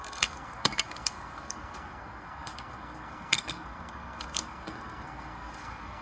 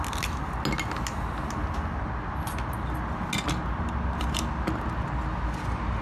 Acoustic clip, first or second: second